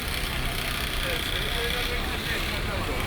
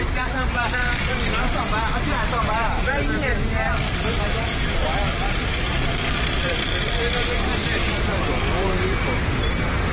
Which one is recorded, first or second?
first